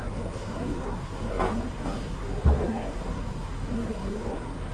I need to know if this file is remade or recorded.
remade